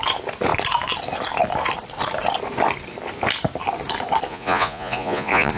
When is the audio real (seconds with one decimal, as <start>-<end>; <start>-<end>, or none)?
0.0-4.3